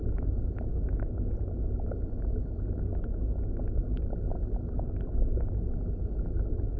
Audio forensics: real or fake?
real